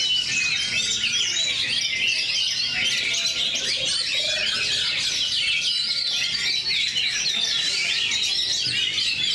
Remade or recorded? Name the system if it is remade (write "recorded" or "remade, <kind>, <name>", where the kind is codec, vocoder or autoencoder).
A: recorded